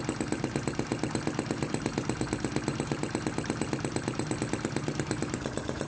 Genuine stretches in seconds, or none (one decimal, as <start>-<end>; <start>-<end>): 0.0-5.9